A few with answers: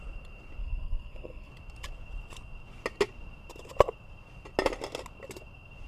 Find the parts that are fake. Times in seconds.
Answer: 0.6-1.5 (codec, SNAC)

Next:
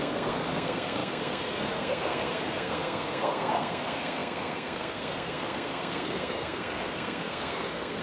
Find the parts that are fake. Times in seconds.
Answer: 0.0-8.0 (codec, SNAC)

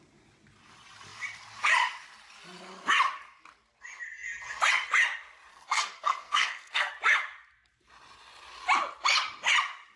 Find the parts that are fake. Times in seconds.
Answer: 5.5-6.9 (codec, SNAC)

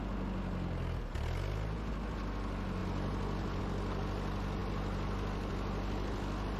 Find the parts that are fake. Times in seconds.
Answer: none

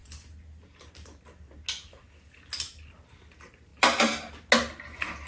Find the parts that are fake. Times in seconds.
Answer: none

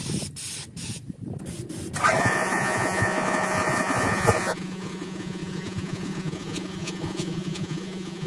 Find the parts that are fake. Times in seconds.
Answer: 2.2-8.3 (vocoder, Vocos)

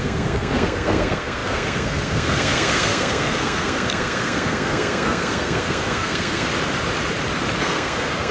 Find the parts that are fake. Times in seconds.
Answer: 0.0-6.5 (codec, SNAC); 7.6-8.3

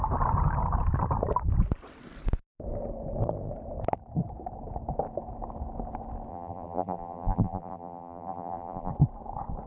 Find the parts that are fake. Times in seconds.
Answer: 6.3-8.9 (vocoder, BigVGAN v2)